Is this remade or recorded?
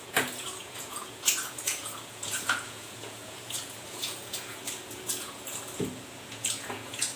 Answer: remade